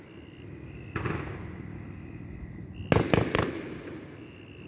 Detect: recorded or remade recorded